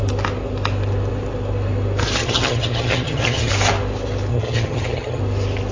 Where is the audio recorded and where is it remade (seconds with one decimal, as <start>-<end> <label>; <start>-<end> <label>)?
0.0-2.2 recorded; 2.2-3.5 remade; 3.5-4.3 recorded; 4.3-5.2 remade; 5.2-5.7 recorded